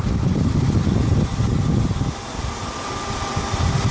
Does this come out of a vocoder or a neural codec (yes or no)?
no